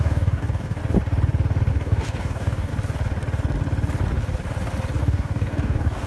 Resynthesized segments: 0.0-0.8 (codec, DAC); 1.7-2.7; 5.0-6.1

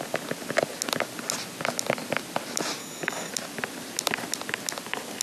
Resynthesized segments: 2.8-3.3 (codec, DAC)

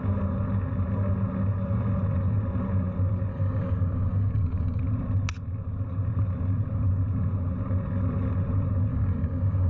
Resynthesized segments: 3.3-4.8 (codec, DAC); 8.9-9.7

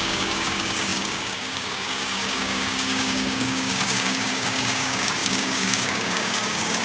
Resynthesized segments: 0.0-6.8 (codec, DAC)